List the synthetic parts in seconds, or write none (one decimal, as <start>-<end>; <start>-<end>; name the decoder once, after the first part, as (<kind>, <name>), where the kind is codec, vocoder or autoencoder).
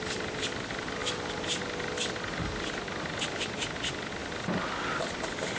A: none